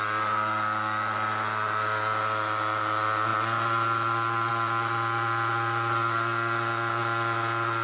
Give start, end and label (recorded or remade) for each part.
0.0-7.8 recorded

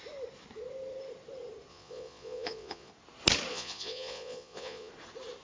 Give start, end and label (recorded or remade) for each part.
0.0-1.7 recorded; 1.7-2.9 remade; 2.9-3.5 recorded; 3.5-4.9 remade; 4.9-5.4 recorded

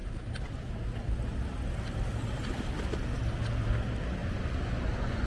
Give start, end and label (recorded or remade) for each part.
0.0-4.2 recorded; 4.2-5.3 remade

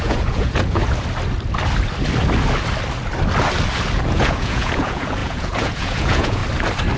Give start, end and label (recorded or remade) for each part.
0.0-0.8 remade; 0.8-4.0 recorded; 4.0-6.4 remade; 6.4-7.0 recorded

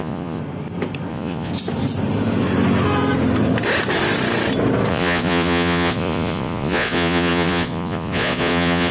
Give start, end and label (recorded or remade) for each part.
0.0-0.4 remade; 0.4-1.1 recorded; 1.1-1.5 remade; 1.5-4.9 recorded; 4.9-8.9 remade